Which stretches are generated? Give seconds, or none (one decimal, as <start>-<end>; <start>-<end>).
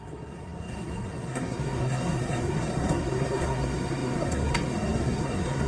0.0-5.7